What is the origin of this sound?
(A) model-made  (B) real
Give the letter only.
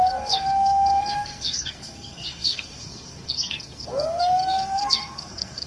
A